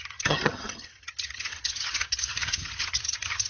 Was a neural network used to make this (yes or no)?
yes